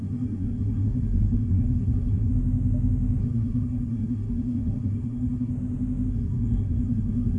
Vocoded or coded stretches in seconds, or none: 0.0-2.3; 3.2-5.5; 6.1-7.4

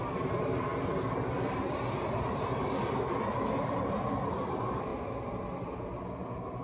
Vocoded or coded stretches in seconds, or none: none